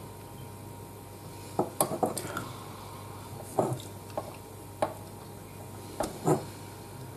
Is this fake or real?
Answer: real